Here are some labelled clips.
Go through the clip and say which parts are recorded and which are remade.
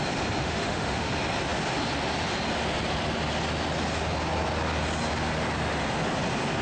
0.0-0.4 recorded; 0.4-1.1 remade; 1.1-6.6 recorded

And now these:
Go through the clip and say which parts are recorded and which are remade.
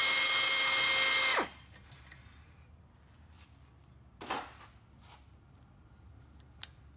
0.0-7.0 recorded